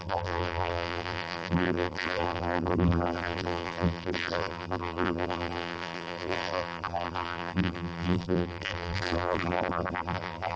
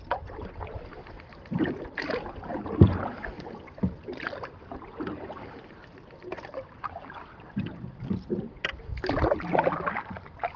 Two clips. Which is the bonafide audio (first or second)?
second